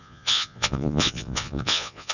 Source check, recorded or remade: remade